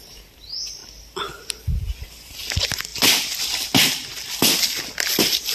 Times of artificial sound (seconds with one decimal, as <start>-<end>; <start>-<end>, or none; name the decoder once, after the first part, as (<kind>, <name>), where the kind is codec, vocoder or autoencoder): none